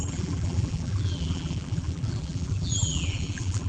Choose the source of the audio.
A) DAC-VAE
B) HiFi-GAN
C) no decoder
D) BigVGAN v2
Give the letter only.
D